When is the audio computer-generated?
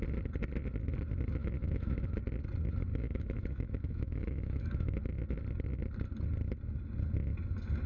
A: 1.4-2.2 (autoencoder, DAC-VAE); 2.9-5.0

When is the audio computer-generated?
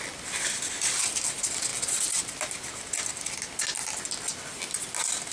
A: none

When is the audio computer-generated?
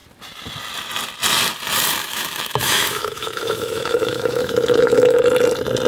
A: 2.0-5.2 (autoencoder, DAC-VAE)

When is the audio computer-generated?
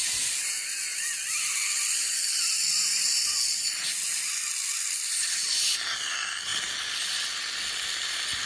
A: none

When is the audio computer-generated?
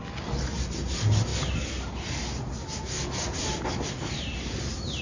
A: none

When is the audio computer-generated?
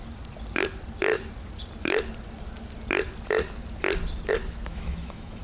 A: 4.7-5.4 (autoencoder, DAC-VAE)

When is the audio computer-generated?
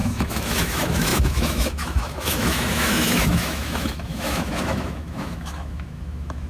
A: 0.0-6.5 (autoencoder, DAC-VAE)